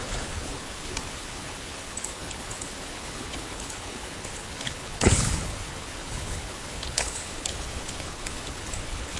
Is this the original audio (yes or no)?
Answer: no